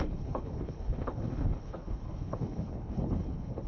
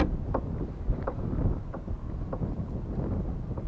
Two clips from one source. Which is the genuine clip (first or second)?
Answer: second